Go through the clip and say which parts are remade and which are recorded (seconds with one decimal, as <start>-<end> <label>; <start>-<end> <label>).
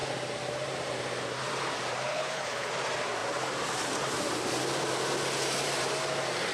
0.0-2.1 recorded; 2.1-2.7 remade; 2.7-6.5 recorded